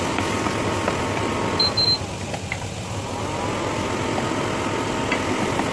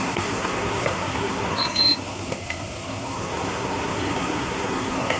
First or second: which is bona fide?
first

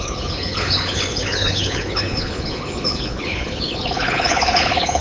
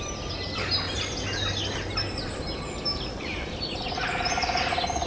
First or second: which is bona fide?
second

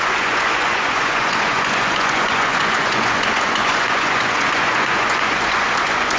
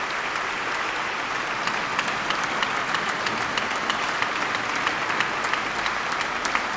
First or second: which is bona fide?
second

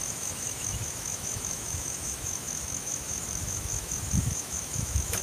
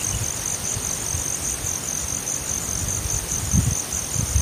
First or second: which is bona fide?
second